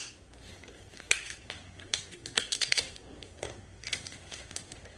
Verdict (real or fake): fake